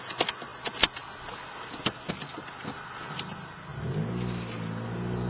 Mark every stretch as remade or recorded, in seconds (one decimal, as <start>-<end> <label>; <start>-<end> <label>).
0.0-5.3 recorded